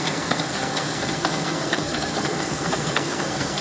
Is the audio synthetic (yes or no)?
yes